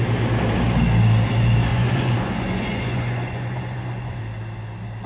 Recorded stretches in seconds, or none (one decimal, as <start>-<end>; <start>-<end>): 0.0-1.7; 4.2-5.1